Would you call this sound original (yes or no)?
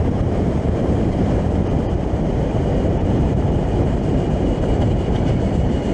no